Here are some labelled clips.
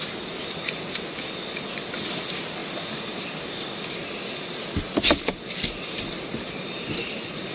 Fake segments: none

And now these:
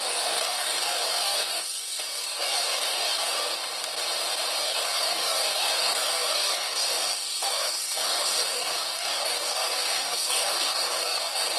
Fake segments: 0.0-3.6 (codec, DAC); 4.6-11.6

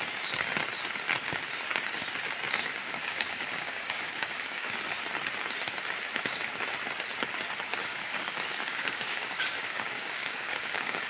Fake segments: 2.8-4.7 (codec, DAC); 7.8-11.1

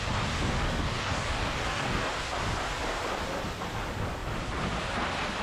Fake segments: 0.6-2.1 (codec, DAC)